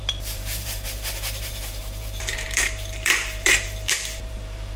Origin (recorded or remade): remade